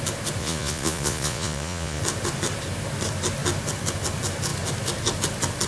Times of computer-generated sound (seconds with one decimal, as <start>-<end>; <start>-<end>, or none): 0.4-2.0